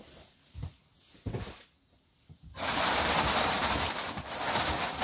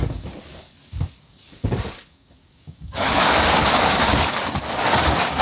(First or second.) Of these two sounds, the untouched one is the first